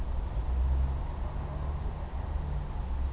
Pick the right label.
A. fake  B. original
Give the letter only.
B